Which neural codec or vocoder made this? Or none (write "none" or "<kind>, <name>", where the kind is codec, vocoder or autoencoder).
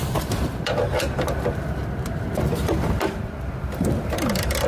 vocoder, BigVGAN v2